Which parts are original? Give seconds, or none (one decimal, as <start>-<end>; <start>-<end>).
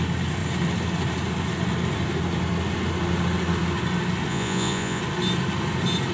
0.0-4.3; 5.0-6.1